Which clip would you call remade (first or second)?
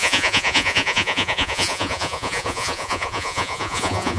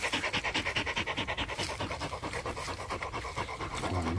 first